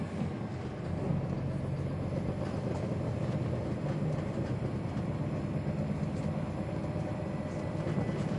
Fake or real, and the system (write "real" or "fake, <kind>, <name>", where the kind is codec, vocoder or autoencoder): real